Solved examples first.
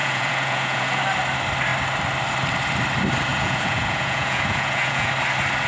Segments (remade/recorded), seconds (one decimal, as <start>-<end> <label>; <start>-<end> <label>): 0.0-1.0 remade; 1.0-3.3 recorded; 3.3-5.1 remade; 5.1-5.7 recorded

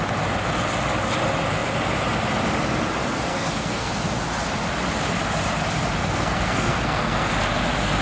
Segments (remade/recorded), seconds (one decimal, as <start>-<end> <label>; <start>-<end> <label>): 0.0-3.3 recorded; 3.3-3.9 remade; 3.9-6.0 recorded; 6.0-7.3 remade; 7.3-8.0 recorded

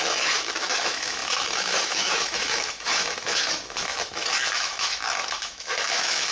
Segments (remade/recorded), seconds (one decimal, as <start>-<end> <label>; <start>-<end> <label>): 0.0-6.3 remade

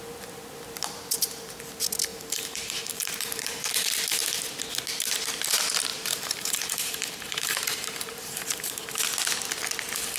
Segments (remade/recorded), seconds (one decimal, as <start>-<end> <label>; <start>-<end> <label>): 0.0-2.1 recorded; 2.1-3.7 remade; 3.7-5.9 recorded; 5.9-8.8 remade; 8.8-10.2 recorded

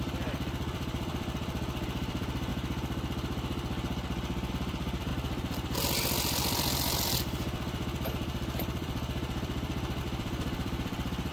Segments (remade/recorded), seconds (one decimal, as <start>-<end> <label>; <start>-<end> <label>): 0.0-2.5 remade; 2.5-4.5 recorded; 4.5-11.3 remade

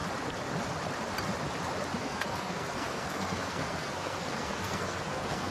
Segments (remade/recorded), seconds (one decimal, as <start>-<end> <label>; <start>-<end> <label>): 0.0-2.0 recorded; 2.0-5.5 remade

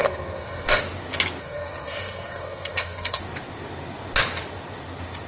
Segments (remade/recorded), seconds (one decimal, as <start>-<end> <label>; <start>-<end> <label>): 0.0-0.8 remade; 0.8-1.4 recorded; 1.4-3.2 remade; 3.2-5.3 recorded